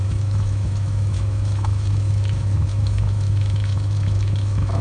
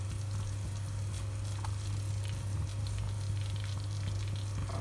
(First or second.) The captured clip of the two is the second